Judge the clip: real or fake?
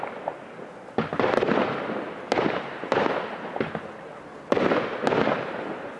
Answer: real